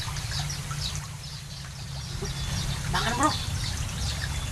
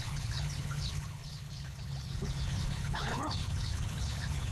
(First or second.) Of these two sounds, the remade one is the second